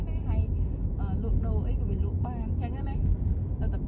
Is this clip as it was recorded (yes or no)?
yes